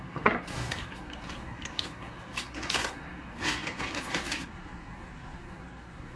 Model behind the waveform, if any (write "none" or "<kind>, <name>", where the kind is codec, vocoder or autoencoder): codec, SNAC